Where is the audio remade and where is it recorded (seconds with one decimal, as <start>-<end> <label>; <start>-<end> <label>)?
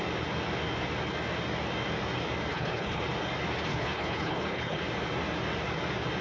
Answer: 0.0-2.5 recorded; 2.5-3.0 remade; 3.0-3.7 recorded; 3.7-4.8 remade; 4.8-6.2 recorded